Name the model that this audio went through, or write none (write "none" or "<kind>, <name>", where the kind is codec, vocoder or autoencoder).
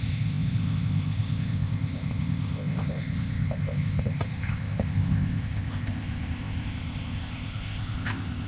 codec, ZipCodec